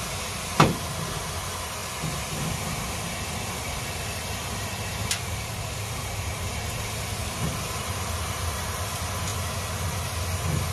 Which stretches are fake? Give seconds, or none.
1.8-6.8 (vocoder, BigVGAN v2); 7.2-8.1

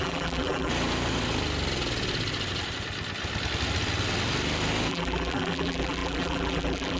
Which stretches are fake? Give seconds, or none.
0.0-0.7 (vocoder, BigVGAN v2); 4.9-7.0